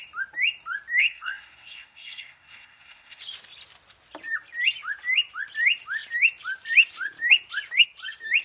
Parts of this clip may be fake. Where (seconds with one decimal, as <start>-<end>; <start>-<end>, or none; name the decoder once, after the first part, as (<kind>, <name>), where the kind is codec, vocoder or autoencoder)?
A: 1.0-3.2 (codec, SNAC)